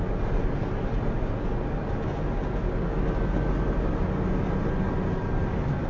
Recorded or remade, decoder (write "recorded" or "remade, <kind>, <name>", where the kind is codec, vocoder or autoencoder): recorded